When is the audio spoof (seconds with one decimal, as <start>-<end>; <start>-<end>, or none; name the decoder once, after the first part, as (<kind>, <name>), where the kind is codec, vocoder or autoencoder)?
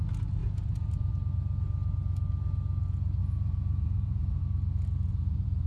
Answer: 0.4-1.1 (vocoder, Vocos); 3.2-4.4; 5.1-5.7